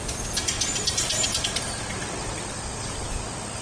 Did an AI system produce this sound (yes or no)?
no